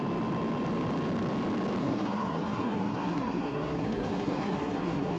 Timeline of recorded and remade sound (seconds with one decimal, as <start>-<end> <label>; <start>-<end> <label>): 0.0-1.8 recorded; 1.8-5.2 remade